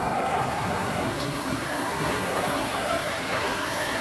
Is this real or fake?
fake